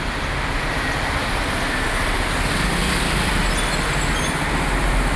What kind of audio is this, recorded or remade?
recorded